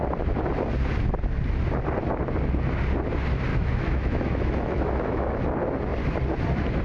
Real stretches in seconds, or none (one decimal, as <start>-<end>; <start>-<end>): 0.0-3.5; 5.4-6.8